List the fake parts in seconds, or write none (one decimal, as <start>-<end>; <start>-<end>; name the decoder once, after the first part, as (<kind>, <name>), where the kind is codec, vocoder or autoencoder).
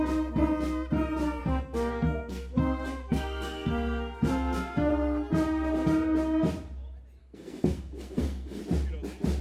1.4-4.9 (codec, SNAC); 7.2-8.6